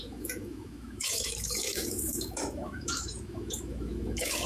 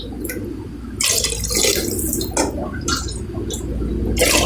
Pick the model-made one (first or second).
first